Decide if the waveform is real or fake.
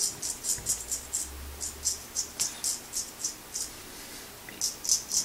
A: real